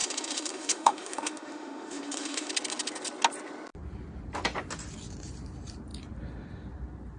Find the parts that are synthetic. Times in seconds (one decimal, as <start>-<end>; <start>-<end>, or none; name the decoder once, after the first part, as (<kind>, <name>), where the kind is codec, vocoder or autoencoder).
0.0-2.5 (autoencoder, DAC-VAE)